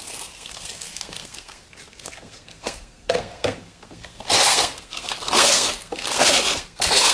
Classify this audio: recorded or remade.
remade